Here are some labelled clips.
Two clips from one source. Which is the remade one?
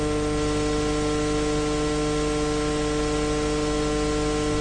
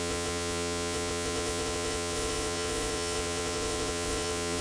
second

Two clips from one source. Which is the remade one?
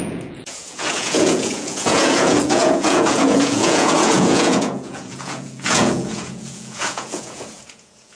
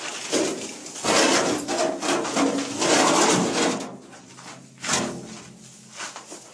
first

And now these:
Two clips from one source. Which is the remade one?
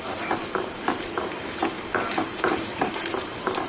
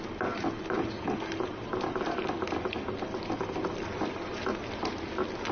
first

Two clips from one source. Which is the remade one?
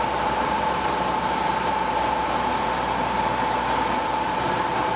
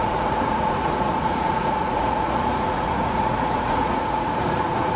second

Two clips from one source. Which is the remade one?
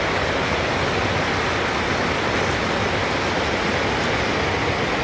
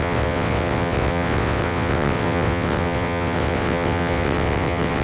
second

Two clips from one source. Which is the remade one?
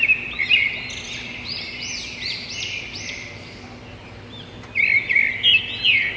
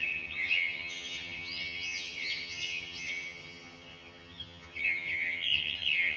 second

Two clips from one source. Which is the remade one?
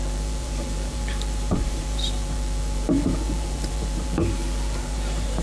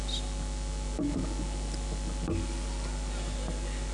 first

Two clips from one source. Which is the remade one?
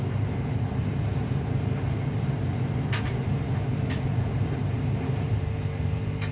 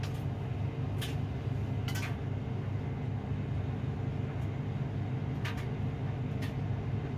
first